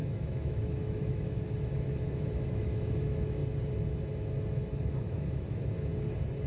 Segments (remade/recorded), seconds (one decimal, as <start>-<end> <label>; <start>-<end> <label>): 0.0-3.4 remade; 3.4-4.6 recorded; 4.6-5.9 remade; 5.9-6.5 recorded